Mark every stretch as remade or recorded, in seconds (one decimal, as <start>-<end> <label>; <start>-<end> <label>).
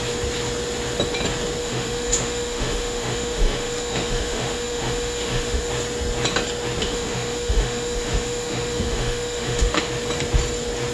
0.0-1.6 recorded; 1.6-5.7 remade; 5.7-6.8 recorded; 6.8-9.9 remade; 9.9-10.9 recorded